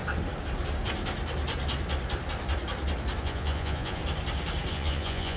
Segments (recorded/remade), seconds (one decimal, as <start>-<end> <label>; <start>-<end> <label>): 0.0-3.2 recorded; 3.2-4.0 remade; 4.0-4.7 recorded; 4.7-5.4 remade